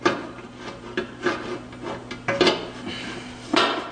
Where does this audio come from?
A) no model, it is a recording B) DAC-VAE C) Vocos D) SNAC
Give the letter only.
A